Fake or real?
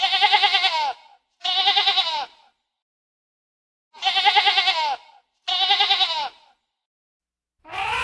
real